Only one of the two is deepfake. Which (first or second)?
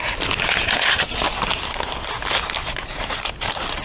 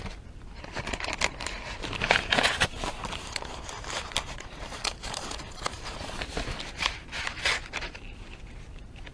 second